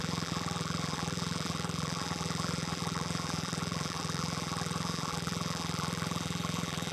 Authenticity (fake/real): fake